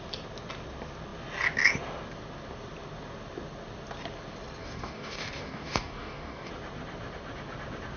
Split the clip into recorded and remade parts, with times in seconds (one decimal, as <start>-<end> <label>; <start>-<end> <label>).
0.0-4.6 recorded; 4.6-6.5 remade; 6.5-8.0 recorded